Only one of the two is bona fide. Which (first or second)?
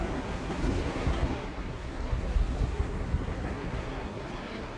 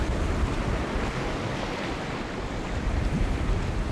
second